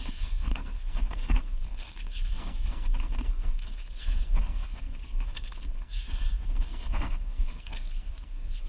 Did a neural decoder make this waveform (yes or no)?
yes